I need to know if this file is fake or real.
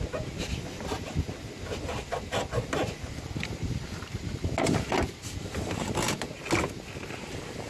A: real